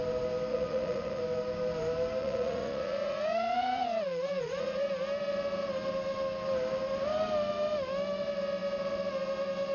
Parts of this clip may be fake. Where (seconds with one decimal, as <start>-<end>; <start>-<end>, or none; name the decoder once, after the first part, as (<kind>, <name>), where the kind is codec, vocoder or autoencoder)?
0.5-1.2 (vocoder, Vocos); 2.2-4.9